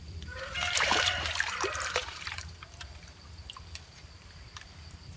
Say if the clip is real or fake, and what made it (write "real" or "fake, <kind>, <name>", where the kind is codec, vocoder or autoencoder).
fake, vocoder, BigVGAN v2